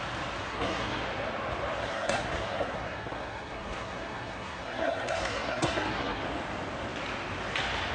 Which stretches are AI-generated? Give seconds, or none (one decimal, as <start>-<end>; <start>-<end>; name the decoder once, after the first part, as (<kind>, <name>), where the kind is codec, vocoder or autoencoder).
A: 0.4-1.0 (codec, SNAC); 1.8-6.2